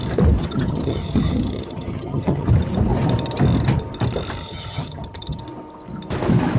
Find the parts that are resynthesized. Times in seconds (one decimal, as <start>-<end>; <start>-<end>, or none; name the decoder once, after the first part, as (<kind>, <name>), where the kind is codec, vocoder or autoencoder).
0.4-2.5 (vocoder, HiFi-GAN); 4.4-5.4